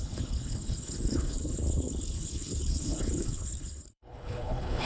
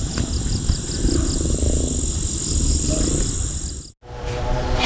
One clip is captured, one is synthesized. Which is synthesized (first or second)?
first